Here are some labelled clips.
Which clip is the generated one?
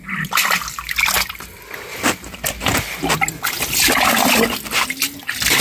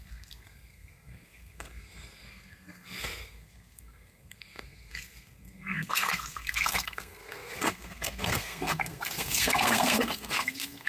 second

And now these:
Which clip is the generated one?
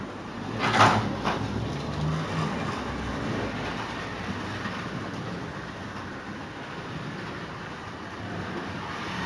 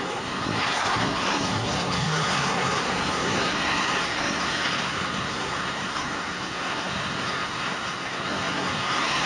second